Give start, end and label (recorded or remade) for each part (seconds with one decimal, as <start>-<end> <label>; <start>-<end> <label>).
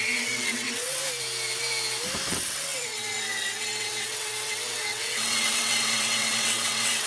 0.0-1.0 remade; 1.0-2.3 recorded; 2.3-7.1 remade